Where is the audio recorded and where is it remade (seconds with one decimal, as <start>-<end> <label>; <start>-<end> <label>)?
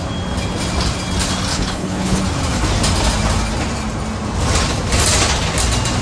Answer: 0.0-1.5 recorded; 1.5-2.2 remade; 2.2-6.0 recorded